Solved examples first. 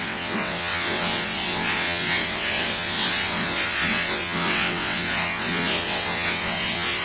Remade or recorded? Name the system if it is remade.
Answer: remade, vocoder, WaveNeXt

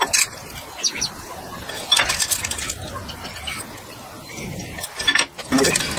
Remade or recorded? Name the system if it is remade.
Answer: recorded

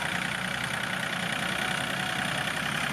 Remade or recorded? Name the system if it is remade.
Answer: recorded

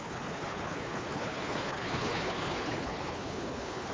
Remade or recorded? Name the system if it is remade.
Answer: remade, codec, HILCodec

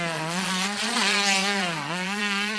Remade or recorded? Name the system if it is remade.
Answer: remade, vocoder, Vocos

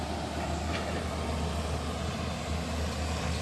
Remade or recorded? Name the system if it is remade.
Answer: recorded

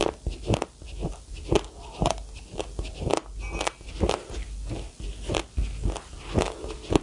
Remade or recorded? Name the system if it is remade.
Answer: recorded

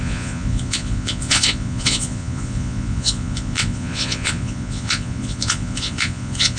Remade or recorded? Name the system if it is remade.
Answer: remade, vocoder, Vocos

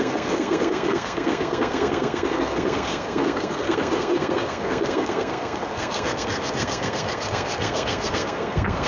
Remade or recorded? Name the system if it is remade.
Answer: remade, codec, SNAC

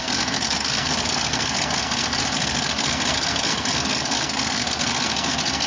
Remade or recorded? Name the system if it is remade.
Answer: remade, codec, SNAC